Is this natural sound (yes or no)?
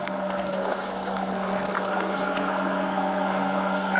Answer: no